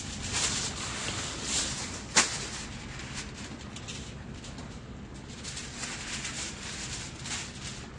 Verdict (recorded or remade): recorded